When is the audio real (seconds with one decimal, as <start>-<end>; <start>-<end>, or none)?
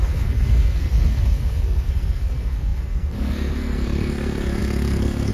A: none